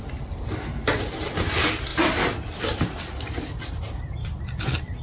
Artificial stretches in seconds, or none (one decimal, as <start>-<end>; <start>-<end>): 1.5-5.0